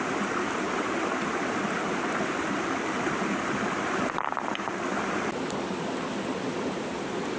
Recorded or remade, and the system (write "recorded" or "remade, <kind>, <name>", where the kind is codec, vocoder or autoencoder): recorded